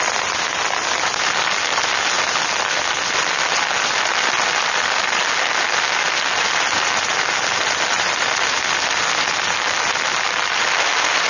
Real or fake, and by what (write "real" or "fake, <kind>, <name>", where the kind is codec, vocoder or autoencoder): real